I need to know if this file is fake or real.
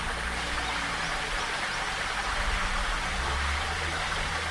real